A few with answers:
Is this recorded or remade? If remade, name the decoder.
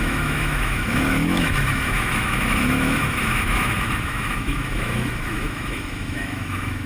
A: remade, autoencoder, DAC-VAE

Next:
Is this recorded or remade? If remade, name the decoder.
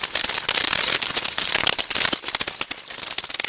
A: recorded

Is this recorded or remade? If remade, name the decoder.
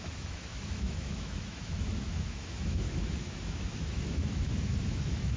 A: remade, autoencoder, DAC-VAE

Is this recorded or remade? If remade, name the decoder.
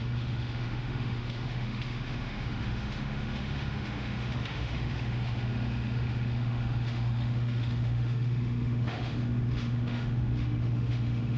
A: remade, autoencoder, DAC-VAE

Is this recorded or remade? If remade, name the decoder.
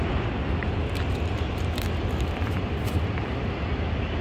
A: recorded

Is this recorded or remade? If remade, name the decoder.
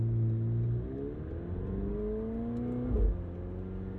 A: recorded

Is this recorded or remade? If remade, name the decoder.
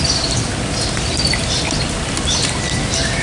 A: recorded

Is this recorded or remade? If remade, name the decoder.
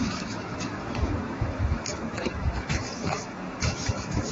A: remade, autoencoder, DAC-VAE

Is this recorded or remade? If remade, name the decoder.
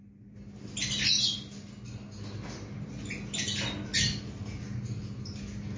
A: recorded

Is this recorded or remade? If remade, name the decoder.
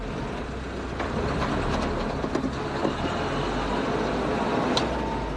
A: recorded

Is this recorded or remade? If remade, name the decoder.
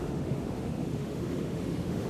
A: remade, autoencoder, DAC-VAE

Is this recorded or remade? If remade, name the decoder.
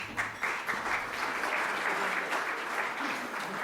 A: recorded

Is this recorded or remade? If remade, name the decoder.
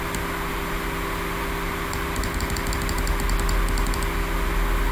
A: recorded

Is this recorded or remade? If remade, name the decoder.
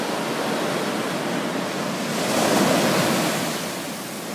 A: recorded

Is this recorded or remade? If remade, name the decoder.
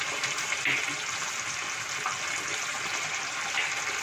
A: recorded